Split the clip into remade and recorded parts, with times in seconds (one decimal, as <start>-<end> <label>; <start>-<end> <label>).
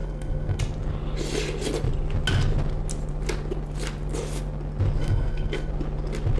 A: 0.0-0.6 remade; 0.6-5.0 recorded; 5.0-5.7 remade; 5.7-6.4 recorded